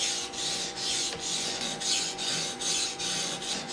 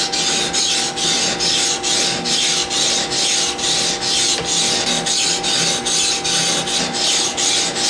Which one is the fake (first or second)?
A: first